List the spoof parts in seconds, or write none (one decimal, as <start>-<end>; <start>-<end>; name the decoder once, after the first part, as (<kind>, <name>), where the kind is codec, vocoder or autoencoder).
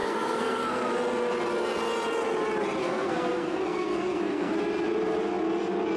0.0-0.9 (codec, SNAC); 2.8-4.5